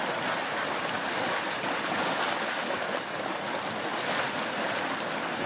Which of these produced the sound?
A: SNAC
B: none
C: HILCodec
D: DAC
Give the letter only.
B